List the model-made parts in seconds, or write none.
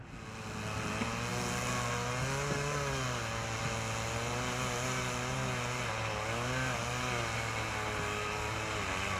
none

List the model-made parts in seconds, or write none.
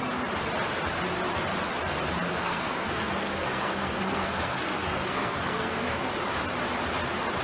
2.3-6.1 (codec, SNAC)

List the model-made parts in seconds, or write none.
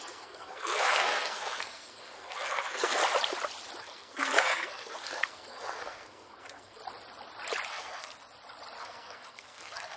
0.0-3.0 (codec, SNAC); 3.8-6.8; 7.7-8.1; 8.8-10.0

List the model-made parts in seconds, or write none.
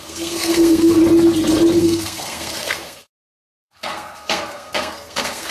0.0-1.0 (codec, SNAC); 1.8-5.5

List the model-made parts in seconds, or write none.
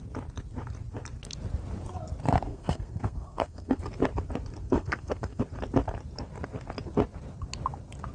2.5-3.8 (codec, SNAC); 4.6-5.4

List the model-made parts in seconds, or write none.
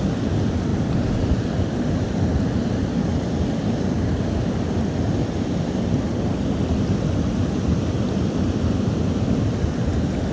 none